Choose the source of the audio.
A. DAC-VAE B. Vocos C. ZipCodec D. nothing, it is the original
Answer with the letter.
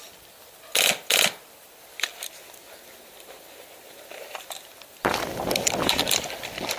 D